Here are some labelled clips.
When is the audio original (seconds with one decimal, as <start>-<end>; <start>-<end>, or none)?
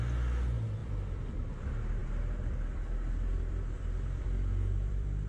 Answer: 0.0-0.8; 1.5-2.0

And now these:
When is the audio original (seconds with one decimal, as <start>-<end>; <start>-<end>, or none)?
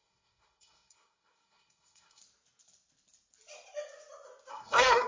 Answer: 2.2-4.5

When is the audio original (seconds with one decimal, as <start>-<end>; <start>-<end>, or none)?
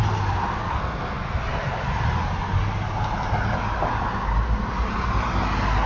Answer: 0.0-0.7; 1.4-5.9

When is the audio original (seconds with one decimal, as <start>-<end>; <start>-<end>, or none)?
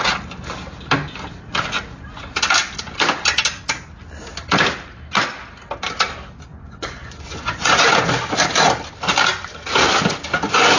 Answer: 0.0-6.5; 7.8-10.8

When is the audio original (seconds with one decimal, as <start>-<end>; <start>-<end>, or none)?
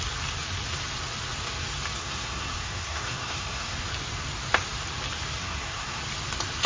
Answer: 0.0-2.0; 3.9-5.4; 6.0-6.7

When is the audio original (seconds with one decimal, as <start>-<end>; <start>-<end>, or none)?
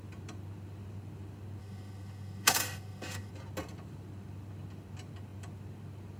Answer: 0.0-1.6; 3.3-6.2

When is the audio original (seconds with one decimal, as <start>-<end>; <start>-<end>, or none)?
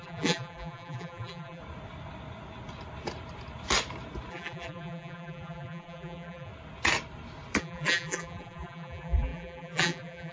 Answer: 1.6-4.3; 6.5-7.6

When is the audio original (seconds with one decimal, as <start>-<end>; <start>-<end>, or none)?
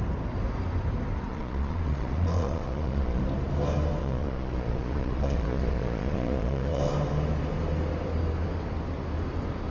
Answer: 0.0-1.3; 3.2-4.0; 6.8-9.7